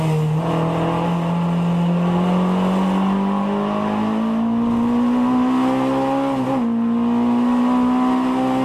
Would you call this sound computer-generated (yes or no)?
no